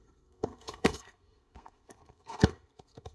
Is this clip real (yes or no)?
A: no